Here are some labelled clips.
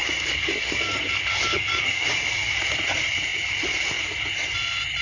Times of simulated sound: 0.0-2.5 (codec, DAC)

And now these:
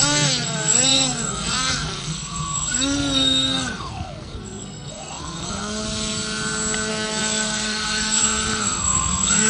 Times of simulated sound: 0.0-5.8 (codec, SNAC); 6.9-9.5